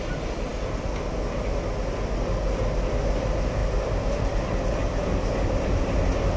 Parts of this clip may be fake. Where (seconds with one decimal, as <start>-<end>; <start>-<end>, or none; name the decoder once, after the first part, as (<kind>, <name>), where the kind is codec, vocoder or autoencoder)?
none

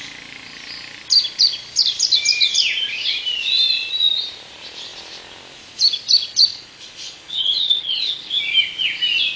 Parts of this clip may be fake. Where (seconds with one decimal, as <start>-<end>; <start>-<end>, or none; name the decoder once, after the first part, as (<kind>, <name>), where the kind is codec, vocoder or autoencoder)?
6.5-8.3 (codec, HILCodec)

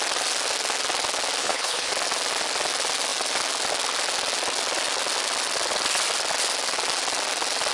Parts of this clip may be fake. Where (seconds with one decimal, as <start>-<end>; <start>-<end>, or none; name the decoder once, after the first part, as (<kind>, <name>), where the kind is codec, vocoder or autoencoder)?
1.4-1.9 (codec, HILCodec)